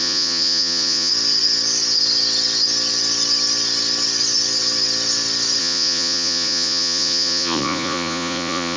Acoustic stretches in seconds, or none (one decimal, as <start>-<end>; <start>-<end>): 1.1-5.6